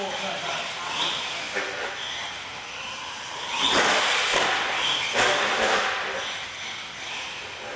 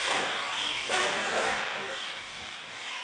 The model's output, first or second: second